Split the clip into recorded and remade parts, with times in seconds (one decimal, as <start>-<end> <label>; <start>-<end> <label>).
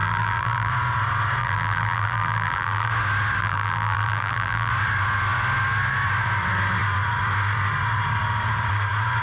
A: 0.0-0.7 remade; 0.7-1.4 recorded; 1.4-2.9 remade; 2.9-3.4 recorded; 3.4-4.7 remade; 4.7-9.2 recorded